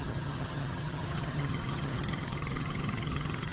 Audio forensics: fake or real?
fake